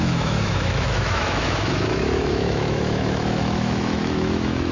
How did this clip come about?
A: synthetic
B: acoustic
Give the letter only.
A